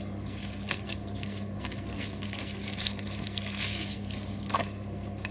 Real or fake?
fake